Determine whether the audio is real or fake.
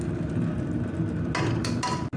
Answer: real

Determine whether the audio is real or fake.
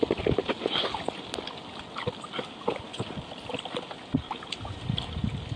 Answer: real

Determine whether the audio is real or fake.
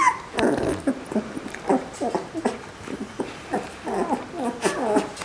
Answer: real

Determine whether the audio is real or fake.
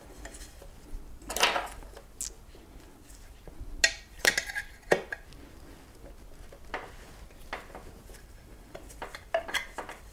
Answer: real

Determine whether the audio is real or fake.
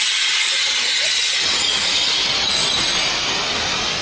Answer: real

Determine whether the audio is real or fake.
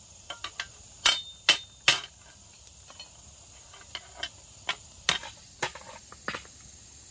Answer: real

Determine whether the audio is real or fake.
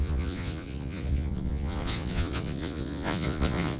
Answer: fake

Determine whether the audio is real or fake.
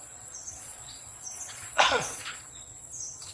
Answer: fake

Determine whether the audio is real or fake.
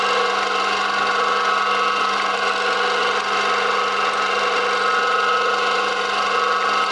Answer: real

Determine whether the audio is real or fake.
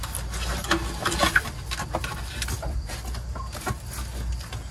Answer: real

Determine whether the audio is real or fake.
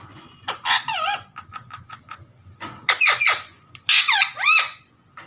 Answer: fake